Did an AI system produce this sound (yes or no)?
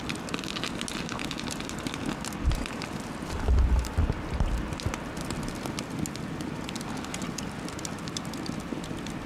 no